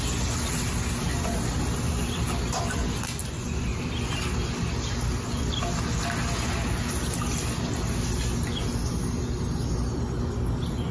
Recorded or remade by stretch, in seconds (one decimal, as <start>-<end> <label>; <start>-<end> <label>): 0.0-3.2 recorded; 3.2-3.8 remade; 3.8-10.9 recorded